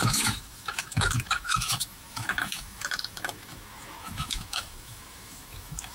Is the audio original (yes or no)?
no